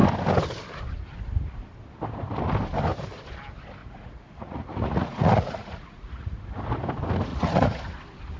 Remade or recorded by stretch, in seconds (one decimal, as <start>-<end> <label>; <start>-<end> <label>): 0.0-3.8 recorded; 3.8-6.5 remade; 6.5-7.3 recorded; 7.3-7.8 remade; 7.8-8.4 recorded